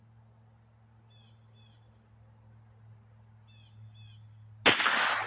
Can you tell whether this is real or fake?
real